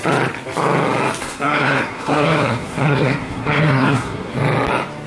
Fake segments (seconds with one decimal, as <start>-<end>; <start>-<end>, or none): 1.2-4.3